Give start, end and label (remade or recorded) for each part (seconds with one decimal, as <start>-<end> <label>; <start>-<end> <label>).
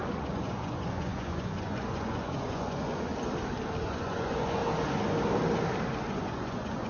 0.0-3.1 remade; 3.1-3.8 recorded; 3.8-4.6 remade; 4.6-6.1 recorded; 6.1-6.9 remade